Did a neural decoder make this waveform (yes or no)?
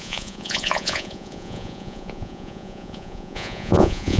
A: yes